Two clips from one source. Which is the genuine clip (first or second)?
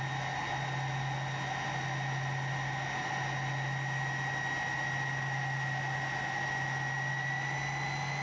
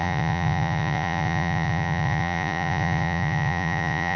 first